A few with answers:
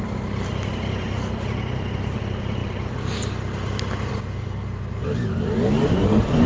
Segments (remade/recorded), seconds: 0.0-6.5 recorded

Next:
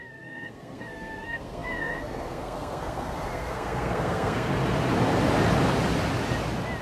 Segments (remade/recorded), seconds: 0.0-4.5 remade; 4.5-6.8 recorded

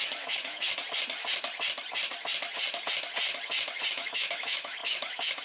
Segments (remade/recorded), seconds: 0.0-0.7 remade; 0.7-3.9 recorded; 3.9-5.4 remade

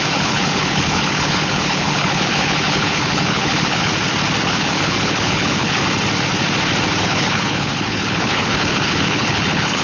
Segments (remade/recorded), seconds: 0.0-3.9 remade; 3.9-4.4 recorded; 4.4-5.8 remade; 5.8-7.0 recorded; 7.0-9.8 remade

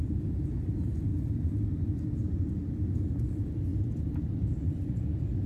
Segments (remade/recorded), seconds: 0.0-1.1 recorded; 1.1-2.9 remade; 2.9-3.7 recorded; 3.7-5.0 remade; 5.0-5.5 recorded

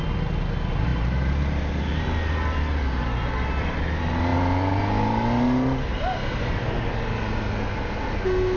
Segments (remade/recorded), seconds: 0.0-8.6 recorded

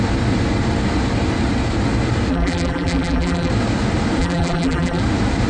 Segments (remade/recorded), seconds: 0.0-2.3 recorded; 2.3-3.5 remade; 3.5-4.2 recorded; 4.2-5.0 remade; 5.0-5.5 recorded

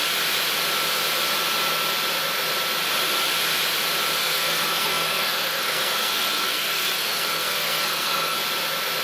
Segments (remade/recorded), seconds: 0.0-4.2 recorded; 4.2-8.4 remade; 8.4-9.0 recorded